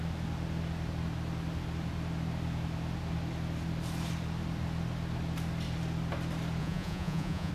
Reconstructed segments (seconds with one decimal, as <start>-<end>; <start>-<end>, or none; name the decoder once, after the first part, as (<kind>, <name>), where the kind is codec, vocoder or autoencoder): 6.6-7.5 (vocoder, Vocos)